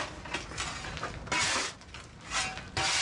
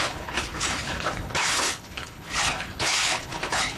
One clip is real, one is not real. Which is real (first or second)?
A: first